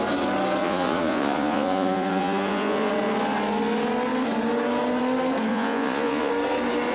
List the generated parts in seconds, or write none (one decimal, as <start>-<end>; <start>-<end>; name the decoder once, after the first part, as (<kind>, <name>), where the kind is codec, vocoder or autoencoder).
0.6-2.9 (vocoder, Vocos); 5.5-6.3